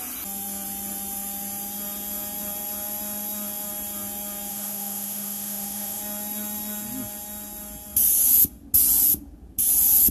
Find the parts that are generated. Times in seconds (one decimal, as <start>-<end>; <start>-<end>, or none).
4.5-6.0